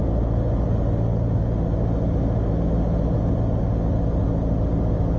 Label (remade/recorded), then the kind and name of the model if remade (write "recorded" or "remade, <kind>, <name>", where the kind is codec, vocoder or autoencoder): recorded